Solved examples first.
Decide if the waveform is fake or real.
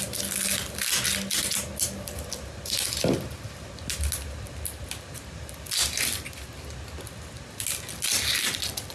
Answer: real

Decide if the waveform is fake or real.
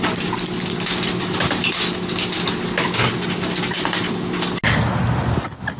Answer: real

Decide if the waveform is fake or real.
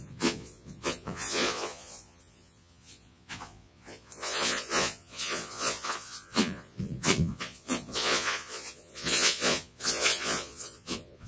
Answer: fake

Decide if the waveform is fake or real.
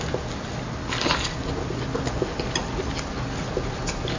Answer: real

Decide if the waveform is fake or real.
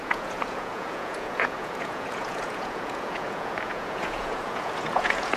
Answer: fake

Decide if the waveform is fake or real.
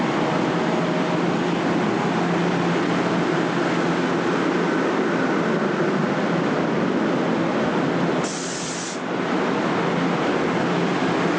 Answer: real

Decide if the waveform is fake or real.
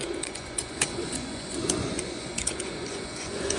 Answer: fake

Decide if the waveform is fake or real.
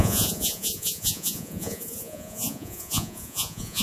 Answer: fake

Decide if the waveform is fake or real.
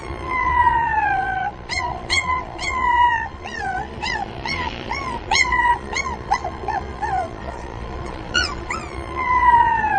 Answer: fake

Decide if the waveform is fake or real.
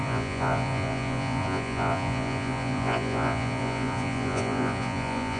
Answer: fake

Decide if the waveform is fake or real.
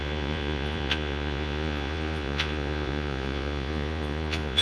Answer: fake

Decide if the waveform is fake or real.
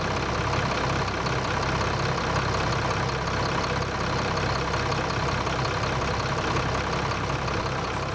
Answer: real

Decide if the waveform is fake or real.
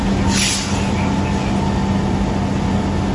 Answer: real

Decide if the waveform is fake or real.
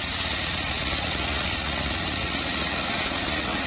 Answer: fake